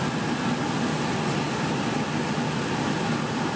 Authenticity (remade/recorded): recorded